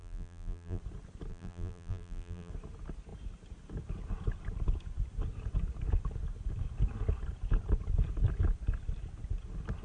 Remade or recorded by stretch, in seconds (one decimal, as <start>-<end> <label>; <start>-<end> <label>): 0.0-0.8 remade; 0.8-1.3 recorded; 1.3-2.5 remade; 2.5-9.8 recorded

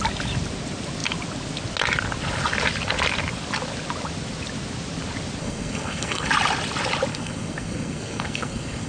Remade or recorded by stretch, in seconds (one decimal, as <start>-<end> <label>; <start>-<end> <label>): 0.0-5.4 recorded; 5.4-6.3 remade; 6.3-7.1 recorded; 7.1-8.9 remade

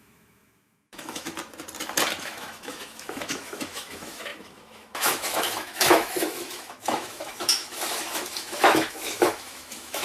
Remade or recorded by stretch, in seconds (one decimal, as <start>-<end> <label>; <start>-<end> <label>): 0.0-1.3 remade; 1.3-2.2 recorded; 2.2-10.0 remade

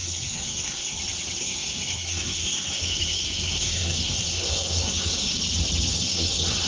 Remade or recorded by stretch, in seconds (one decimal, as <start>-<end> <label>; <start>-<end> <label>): 0.0-1.0 remade; 1.0-1.4 recorded; 1.4-5.4 remade; 5.4-5.9 recorded; 5.9-6.7 remade

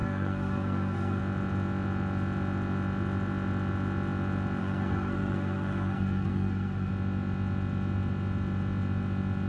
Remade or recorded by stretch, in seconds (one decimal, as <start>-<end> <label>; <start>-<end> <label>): 0.0-1.2 remade; 1.2-4.6 recorded; 4.6-6.9 remade; 6.9-9.5 recorded

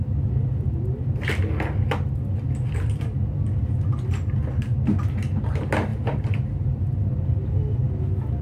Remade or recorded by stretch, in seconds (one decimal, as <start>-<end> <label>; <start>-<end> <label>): 0.0-5.9 recorded; 5.9-7.9 remade; 7.9-8.4 recorded

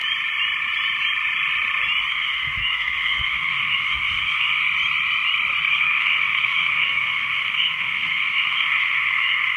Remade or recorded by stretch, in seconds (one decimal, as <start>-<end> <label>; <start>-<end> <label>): 0.0-2.1 recorded; 2.1-4.6 remade; 4.6-5.7 recorded; 5.7-9.6 remade

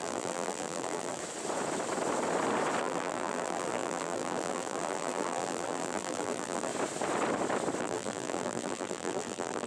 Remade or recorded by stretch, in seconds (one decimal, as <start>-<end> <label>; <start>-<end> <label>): 0.0-1.2 remade; 1.2-2.8 recorded; 2.8-6.7 remade; 6.7-7.8 recorded; 7.8-9.7 remade